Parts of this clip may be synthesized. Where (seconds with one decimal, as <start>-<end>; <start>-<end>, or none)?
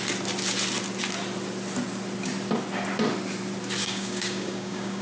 3.8-5.0